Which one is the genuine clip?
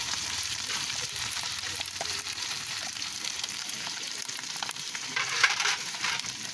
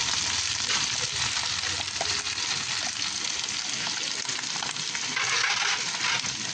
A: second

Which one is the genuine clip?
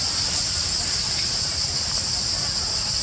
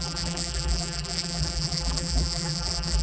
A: first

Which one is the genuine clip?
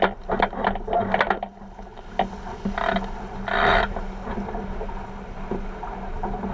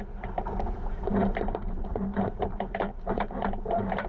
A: first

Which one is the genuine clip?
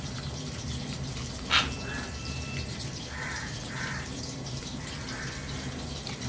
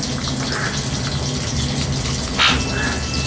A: second